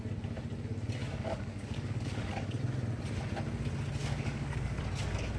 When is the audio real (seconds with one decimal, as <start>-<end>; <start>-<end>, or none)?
0.0-1.0; 2.6-4.0; 4.8-5.4